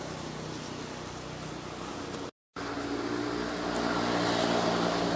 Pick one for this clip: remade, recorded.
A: recorded